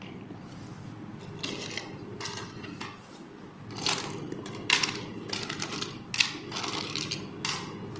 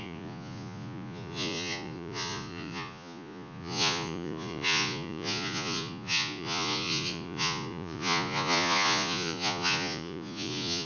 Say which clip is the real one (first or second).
first